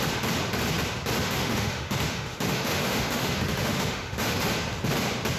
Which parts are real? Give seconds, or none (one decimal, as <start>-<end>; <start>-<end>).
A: 0.0-1.2; 4.4-5.4